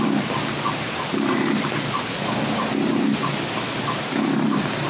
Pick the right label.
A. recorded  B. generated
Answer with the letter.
A